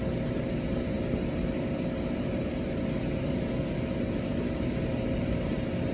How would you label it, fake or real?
real